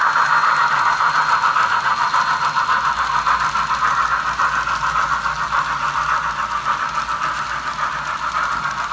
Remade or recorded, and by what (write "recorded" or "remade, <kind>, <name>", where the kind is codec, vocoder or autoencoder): recorded